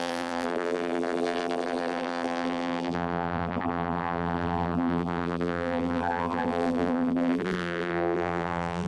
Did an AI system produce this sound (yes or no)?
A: yes